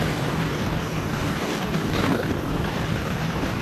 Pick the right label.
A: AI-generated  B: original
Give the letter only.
A